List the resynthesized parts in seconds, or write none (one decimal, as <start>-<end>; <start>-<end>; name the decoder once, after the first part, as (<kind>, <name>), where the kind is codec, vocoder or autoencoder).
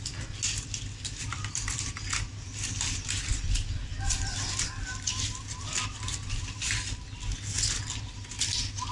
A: none